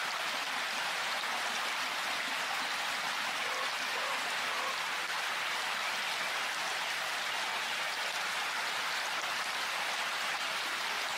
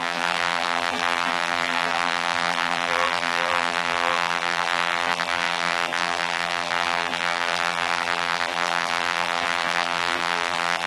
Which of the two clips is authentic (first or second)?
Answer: first